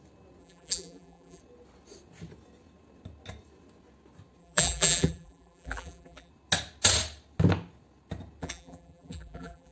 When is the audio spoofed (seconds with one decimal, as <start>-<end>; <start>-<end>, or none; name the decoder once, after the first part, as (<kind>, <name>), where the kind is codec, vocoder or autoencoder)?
0.4-1.4 (vocoder, BigVGAN v2); 4.4-6.3; 8.4-9.7